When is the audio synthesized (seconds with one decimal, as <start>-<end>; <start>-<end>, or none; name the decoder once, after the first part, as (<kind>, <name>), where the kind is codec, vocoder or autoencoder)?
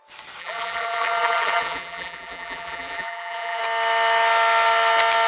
0.4-3.6 (vocoder, BigVGAN v2)